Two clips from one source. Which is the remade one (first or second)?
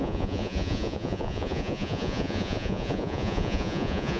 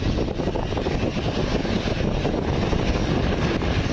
first